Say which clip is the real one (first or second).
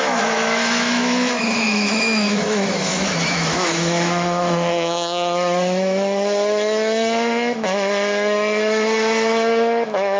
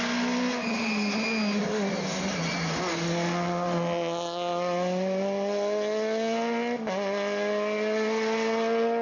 second